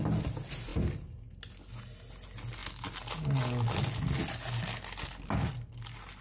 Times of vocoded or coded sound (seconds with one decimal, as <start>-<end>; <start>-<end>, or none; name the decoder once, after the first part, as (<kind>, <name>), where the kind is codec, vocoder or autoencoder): none